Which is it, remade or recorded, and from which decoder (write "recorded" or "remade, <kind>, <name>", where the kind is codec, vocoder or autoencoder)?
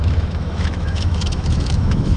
remade, autoencoder, DAC-VAE